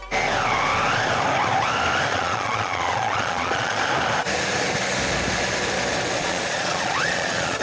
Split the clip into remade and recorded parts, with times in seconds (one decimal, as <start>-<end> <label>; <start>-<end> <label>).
0.0-2.1 recorded; 2.1-3.8 remade; 3.8-6.2 recorded; 6.2-7.6 remade